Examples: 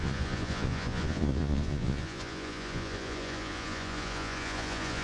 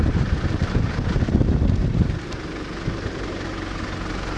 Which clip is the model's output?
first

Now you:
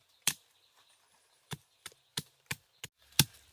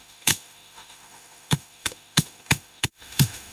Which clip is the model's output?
second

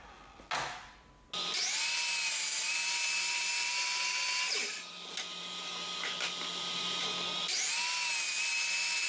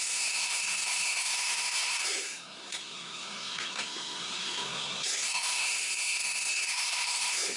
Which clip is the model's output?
second